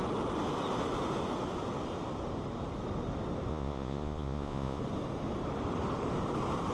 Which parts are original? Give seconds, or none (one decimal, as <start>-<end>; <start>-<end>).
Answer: 0.0-3.5; 4.8-6.7